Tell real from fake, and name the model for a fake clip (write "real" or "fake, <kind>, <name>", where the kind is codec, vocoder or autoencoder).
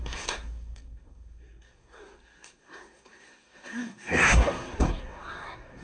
fake, codec, SNAC